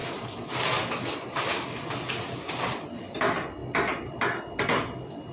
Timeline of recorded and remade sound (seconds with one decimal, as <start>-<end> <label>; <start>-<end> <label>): 0.0-5.3 recorded